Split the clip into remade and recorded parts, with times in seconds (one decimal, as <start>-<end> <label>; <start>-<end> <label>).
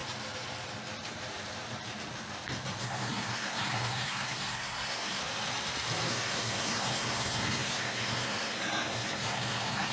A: 0.0-2.8 recorded; 2.8-5.2 remade; 5.2-6.1 recorded; 6.1-9.9 remade